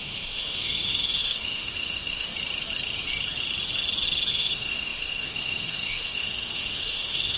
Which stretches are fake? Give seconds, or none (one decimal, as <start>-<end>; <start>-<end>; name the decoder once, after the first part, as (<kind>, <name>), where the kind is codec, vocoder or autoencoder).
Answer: 0.0-2.3 (autoencoder, DAC-VAE); 4.3-7.4